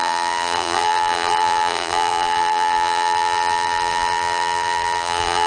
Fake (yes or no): yes